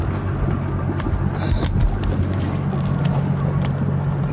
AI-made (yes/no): no